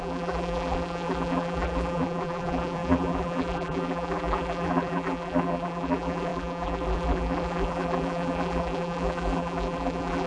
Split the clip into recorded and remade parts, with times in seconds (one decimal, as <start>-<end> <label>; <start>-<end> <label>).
0.0-10.3 remade